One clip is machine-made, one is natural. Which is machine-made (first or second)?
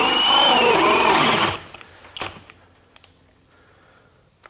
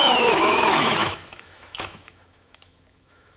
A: second